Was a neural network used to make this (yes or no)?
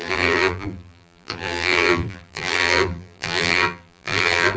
yes